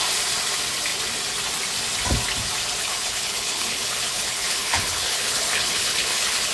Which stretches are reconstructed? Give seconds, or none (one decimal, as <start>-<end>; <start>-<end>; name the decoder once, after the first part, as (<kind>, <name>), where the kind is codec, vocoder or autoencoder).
2.8-6.5 (codec, HILCodec)